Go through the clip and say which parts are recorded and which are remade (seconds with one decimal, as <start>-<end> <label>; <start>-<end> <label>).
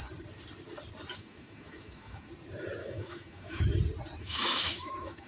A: 0.0-1.1 recorded; 1.1-2.3 remade; 2.3-2.8 recorded; 2.8-3.6 remade; 3.6-4.2 recorded; 4.2-5.3 remade